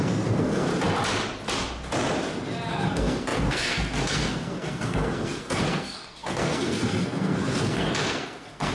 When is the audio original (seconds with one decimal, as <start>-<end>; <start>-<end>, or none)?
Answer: 0.7-2.7